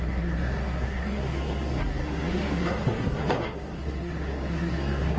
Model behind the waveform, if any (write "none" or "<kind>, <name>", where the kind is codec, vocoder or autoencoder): codec, SNAC